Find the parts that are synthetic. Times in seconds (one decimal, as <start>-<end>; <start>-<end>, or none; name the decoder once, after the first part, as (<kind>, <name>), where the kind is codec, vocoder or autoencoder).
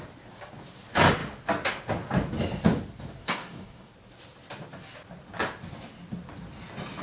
3.2-3.9 (codec, DAC)